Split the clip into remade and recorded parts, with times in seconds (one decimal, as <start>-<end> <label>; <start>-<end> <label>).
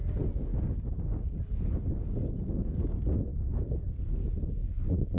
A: 0.0-4.6 recorded; 4.6-5.2 remade